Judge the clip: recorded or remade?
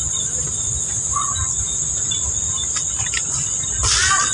recorded